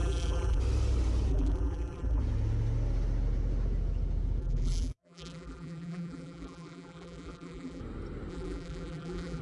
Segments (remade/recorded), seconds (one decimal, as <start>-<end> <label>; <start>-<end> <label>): 0.0-0.6 remade; 0.6-1.3 recorded; 1.3-2.2 remade; 2.2-4.4 recorded; 4.4-7.8 remade; 7.8-8.3 recorded; 8.3-9.4 remade